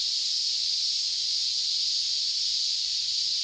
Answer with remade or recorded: recorded